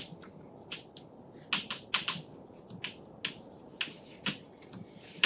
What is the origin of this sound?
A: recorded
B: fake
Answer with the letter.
A